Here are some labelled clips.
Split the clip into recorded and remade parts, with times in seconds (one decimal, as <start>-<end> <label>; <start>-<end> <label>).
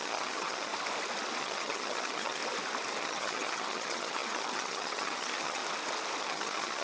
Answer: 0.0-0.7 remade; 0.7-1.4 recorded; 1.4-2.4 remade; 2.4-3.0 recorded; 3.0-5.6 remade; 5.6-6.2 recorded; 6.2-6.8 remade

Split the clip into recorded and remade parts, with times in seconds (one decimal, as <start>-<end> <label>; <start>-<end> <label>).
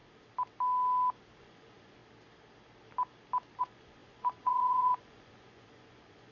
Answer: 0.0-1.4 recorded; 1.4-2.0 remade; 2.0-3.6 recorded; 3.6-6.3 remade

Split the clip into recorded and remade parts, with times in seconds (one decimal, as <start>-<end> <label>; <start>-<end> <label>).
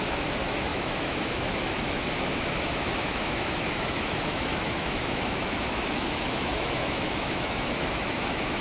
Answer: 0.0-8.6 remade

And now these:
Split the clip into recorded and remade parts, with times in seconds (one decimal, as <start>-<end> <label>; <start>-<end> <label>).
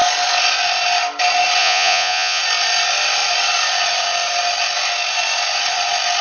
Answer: 0.0-1.6 recorded; 1.6-2.4 remade; 2.4-6.2 recorded